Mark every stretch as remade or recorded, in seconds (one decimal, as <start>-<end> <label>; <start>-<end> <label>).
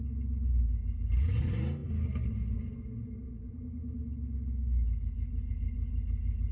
0.0-6.5 recorded